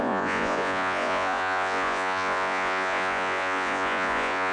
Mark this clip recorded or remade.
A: remade